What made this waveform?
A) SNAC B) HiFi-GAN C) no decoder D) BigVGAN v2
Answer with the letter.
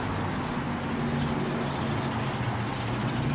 C